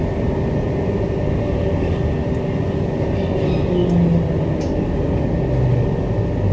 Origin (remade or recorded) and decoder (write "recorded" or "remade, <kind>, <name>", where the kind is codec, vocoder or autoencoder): recorded